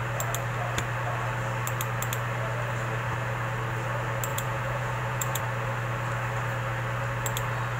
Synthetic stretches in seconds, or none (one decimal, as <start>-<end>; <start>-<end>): 4.3-5.4